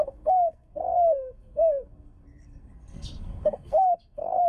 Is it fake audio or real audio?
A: fake